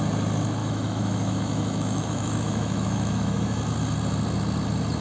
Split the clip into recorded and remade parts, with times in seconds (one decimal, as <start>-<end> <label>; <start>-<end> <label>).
0.0-0.6 recorded; 0.6-3.6 remade; 3.6-5.0 recorded